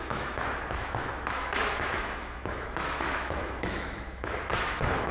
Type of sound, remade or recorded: remade